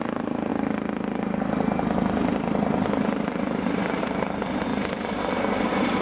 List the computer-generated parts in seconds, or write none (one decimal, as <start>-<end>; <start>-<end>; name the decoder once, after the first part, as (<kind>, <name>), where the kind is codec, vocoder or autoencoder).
0.0-0.5 (vocoder, BigVGAN v2); 4.0-4.7; 5.6-6.0